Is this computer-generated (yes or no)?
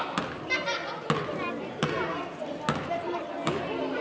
no